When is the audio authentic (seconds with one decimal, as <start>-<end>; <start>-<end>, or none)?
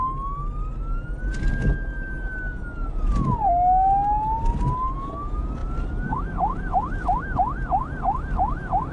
0.0-5.6; 7.2-8.9